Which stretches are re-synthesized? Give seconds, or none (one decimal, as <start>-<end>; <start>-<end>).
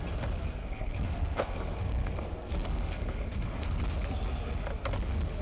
0.6-3.8